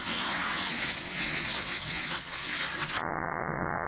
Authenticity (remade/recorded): remade